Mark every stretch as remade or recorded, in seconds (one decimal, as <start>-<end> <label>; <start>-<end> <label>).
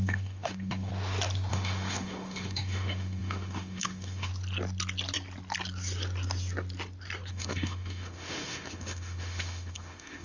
0.0-0.9 remade; 0.9-1.5 recorded; 1.5-4.3 remade; 4.3-7.3 recorded; 7.3-10.2 remade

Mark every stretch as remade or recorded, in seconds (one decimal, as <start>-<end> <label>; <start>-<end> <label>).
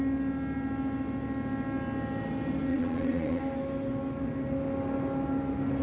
0.0-2.7 recorded; 2.7-3.4 remade; 3.4-5.8 recorded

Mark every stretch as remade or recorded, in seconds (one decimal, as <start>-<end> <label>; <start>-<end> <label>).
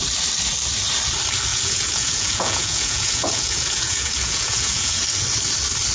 0.0-1.5 recorded; 1.5-5.0 remade; 5.0-5.9 recorded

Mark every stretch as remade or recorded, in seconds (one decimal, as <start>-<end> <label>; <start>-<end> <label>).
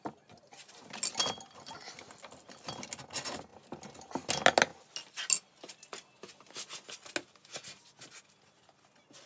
0.0-9.3 recorded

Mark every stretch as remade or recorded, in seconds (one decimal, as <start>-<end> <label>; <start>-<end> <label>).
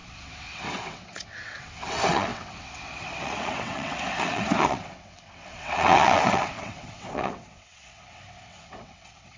0.0-9.4 remade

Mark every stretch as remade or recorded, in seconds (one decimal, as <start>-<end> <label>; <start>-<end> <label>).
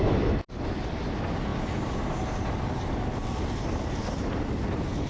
0.0-5.1 recorded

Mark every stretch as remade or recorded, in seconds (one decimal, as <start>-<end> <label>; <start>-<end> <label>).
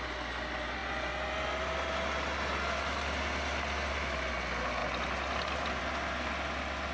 0.0-6.9 recorded